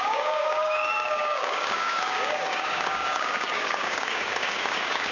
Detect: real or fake fake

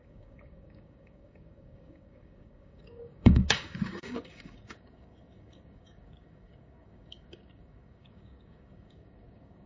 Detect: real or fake fake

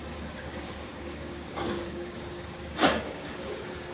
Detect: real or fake fake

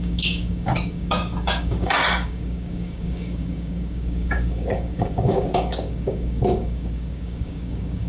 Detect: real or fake fake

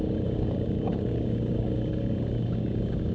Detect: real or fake fake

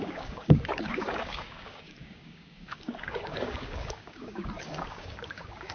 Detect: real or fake fake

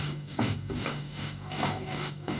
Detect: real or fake fake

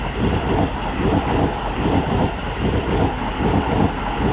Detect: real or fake real